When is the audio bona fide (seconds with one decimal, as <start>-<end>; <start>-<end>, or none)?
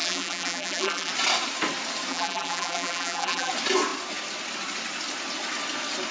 1.1-2.1; 3.5-6.1